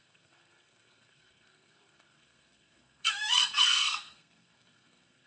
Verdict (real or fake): fake